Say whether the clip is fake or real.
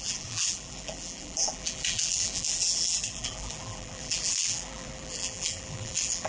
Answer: fake